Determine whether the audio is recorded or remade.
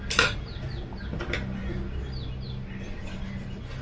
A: recorded